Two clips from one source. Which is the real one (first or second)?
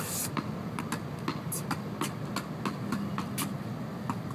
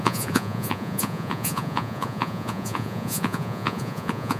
first